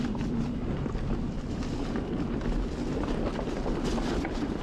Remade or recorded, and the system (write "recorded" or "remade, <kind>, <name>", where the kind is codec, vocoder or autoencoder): recorded